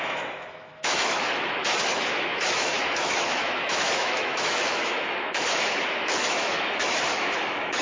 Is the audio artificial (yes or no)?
yes